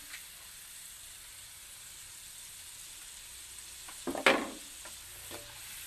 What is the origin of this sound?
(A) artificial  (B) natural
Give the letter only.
B